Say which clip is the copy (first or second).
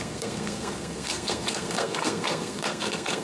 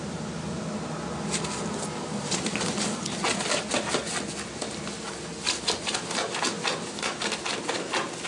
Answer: first